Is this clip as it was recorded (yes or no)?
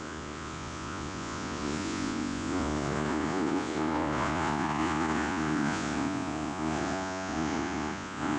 no